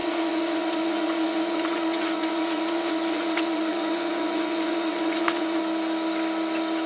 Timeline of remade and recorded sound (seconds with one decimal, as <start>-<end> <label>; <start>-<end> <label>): 0.0-5.6 remade; 5.6-6.9 recorded